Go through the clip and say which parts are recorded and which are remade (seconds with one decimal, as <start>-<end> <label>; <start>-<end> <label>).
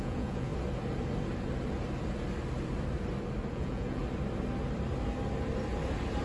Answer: 0.0-0.5 remade; 0.5-3.5 recorded; 3.5-4.0 remade; 4.0-6.2 recorded